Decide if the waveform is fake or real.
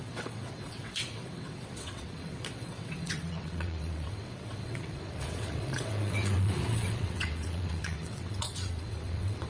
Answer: fake